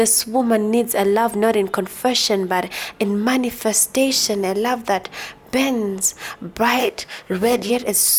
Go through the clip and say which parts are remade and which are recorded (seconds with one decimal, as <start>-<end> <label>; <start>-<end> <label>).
0.0-6.8 recorded; 6.8-7.7 remade; 7.7-8.2 recorded